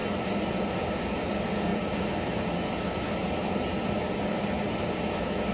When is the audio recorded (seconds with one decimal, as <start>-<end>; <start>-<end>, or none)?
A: 0.0-1.0; 1.7-5.0